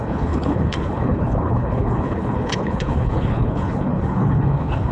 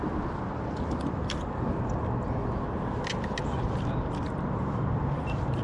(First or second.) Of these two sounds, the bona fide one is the second